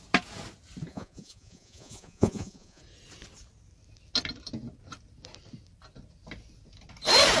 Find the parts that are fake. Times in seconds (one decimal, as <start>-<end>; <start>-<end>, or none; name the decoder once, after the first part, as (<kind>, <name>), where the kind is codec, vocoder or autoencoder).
0.9-2.8 (vocoder, Vocos)